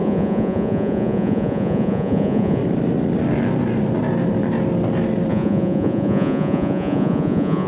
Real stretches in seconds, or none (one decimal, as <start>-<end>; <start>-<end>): 2.6-5.3